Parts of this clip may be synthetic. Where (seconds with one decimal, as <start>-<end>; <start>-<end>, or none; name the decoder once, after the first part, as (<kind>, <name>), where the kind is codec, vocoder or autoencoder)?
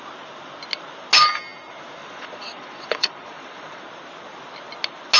2.0-3.8 (vocoder, Vocos)